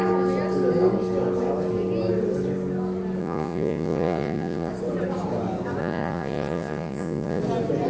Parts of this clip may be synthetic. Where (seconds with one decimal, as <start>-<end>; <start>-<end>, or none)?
3.2-4.7; 5.8-7.4